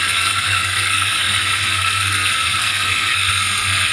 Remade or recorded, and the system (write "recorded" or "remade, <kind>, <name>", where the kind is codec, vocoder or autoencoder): remade, codec, SNAC